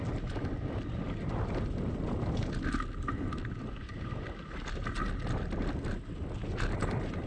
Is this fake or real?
real